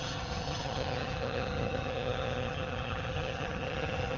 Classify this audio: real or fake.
fake